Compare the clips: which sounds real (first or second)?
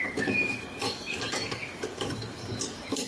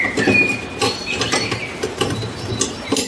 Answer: second